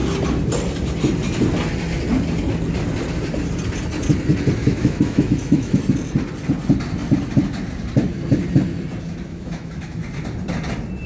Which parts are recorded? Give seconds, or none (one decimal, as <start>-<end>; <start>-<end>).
0.0-4.6; 5.8-9.3; 10.0-11.1